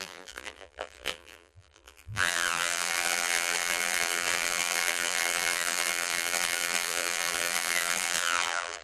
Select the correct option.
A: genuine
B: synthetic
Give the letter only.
B